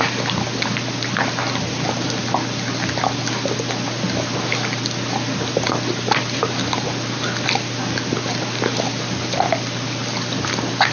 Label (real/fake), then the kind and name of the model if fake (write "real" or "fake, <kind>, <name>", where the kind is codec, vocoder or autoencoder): real